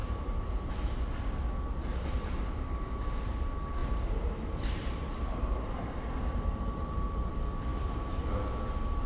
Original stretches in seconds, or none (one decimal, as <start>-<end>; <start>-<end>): 0.7-3.8; 7.3-7.7; 8.2-9.1